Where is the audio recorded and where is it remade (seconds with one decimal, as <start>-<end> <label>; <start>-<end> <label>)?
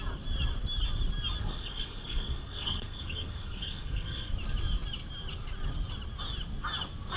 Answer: 0.0-1.4 recorded; 1.4-4.3 remade; 4.3-7.2 recorded